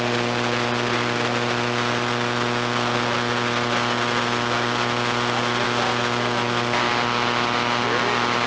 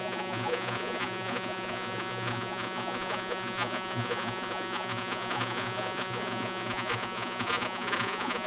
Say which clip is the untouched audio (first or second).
first